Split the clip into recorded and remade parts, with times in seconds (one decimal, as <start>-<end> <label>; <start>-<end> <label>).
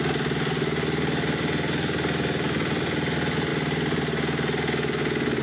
0.0-5.4 recorded